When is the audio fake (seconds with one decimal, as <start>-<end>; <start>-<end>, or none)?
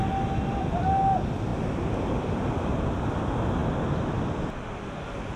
none